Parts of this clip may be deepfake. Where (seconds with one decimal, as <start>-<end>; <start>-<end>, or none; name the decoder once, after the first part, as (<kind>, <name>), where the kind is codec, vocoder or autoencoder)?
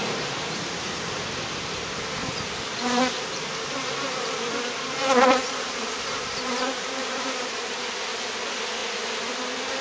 0.0-2.0 (vocoder, BigVGAN v2); 2.7-8.0